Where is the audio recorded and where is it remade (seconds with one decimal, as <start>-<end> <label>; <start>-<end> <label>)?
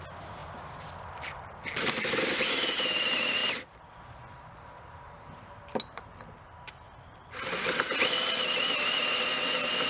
0.0-9.9 recorded